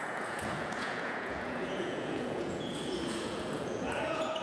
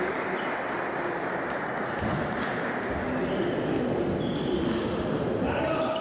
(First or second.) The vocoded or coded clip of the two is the first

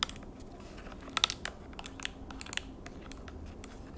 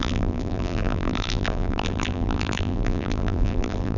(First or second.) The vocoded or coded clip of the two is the second